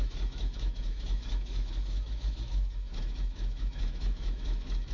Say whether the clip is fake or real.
fake